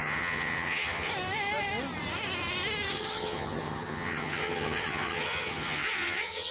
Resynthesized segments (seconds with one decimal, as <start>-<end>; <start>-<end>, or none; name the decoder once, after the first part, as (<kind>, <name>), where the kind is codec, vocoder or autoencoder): 0.0-1.1 (vocoder, HiFi-GAN); 2.9-6.5